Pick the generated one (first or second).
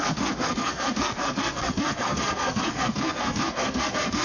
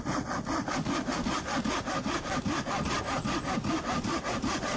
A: first